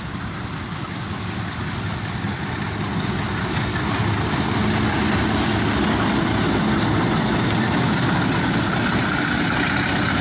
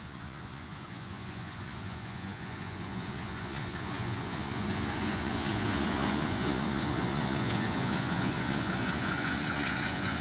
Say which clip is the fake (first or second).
second